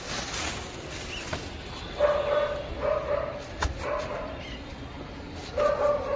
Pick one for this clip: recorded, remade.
recorded